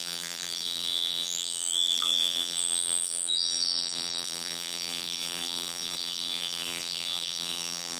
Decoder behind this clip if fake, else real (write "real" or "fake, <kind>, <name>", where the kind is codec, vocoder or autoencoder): fake, vocoder, BigVGAN v2